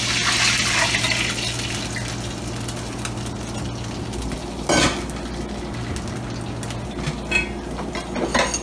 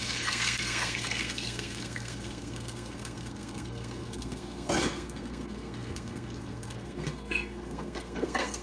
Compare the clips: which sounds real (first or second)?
first